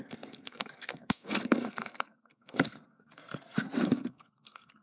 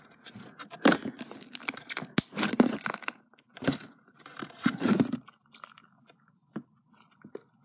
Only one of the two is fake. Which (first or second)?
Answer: first